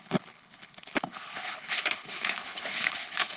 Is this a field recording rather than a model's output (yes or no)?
no